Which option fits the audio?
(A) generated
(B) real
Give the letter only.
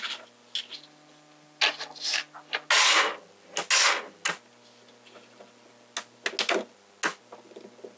B